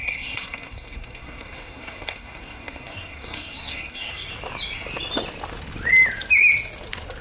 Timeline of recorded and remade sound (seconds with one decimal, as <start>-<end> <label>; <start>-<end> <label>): 0.0-4.3 remade; 4.3-7.2 recorded